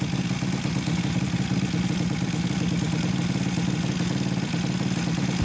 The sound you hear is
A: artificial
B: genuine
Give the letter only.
B